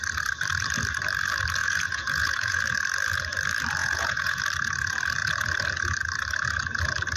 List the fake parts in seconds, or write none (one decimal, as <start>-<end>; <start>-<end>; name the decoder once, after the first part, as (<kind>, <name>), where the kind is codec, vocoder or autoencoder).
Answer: 1.6-2.6 (vocoder, Vocos); 3.8-4.4